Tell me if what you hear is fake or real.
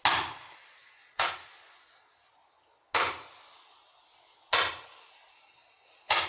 real